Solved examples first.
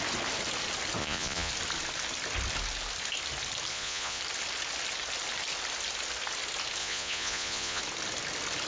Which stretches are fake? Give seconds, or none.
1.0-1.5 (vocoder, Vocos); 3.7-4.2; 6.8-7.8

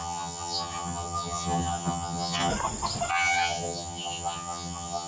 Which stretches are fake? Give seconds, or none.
0.0-2.5 (vocoder, HiFi-GAN); 3.1-5.1

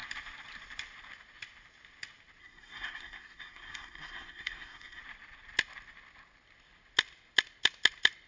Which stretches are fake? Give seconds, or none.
2.4-5.0 (codec, SNAC)

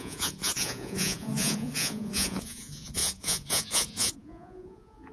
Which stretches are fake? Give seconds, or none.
0.0-5.1 (vocoder, Vocos)

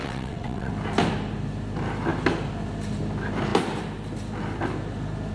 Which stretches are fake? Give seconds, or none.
0.0-0.7 (vocoder, WaveNeXt)